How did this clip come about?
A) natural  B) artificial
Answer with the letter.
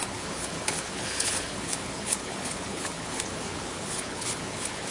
B